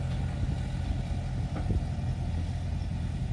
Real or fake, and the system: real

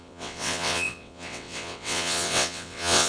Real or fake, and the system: fake, vocoder, WaveNeXt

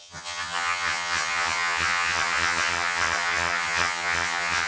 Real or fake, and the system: fake, vocoder, HiFi-GAN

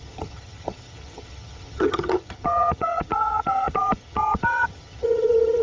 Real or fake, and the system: fake, vocoder, HiFi-GAN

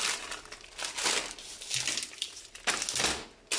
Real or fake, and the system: real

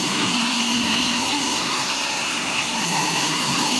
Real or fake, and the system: fake, codec, SNAC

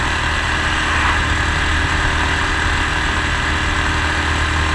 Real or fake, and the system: real